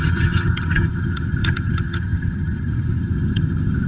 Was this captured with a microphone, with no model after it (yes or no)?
no